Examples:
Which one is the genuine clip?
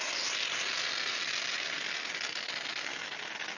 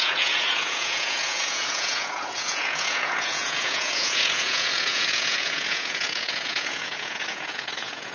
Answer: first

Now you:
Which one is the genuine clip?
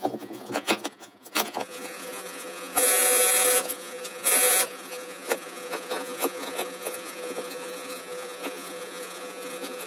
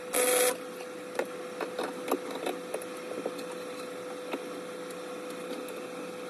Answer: second